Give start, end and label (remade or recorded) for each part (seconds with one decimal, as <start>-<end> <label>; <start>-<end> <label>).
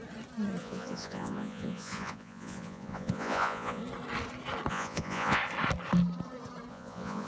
0.0-0.6 recorded; 0.6-3.8 remade; 3.8-4.7 recorded; 4.7-5.4 remade; 5.4-6.7 recorded; 6.7-7.3 remade